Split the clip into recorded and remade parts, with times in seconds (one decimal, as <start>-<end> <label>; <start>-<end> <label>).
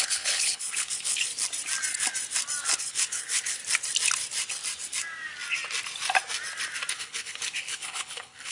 0.0-1.3 remade; 1.3-2.8 recorded; 2.8-3.6 remade; 3.6-6.9 recorded; 6.9-8.5 remade